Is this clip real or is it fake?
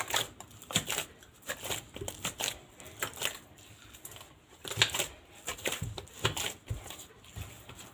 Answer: real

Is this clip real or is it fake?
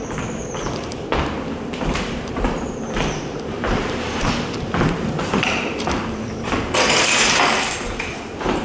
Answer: fake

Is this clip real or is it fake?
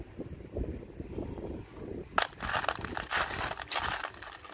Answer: real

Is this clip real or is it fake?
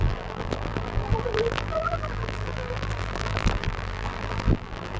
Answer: fake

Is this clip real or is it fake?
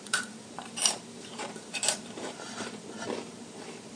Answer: fake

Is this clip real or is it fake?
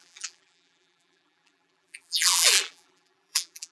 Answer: fake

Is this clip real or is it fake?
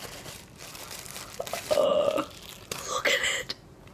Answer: real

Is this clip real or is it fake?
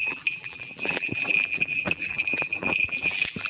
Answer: fake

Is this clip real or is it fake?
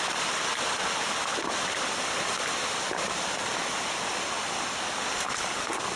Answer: real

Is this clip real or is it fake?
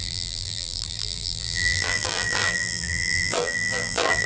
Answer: fake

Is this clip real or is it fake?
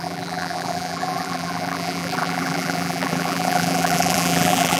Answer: fake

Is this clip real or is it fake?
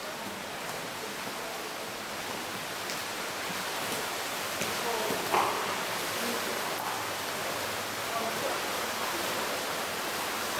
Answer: real